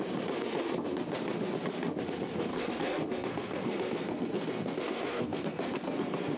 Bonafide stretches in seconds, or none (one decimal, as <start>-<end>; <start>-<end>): 0.0-2.5